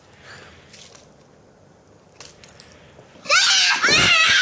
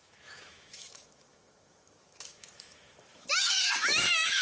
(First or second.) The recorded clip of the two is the first